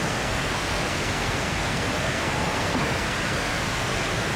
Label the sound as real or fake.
fake